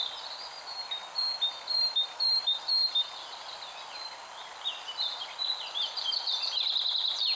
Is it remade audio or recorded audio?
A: recorded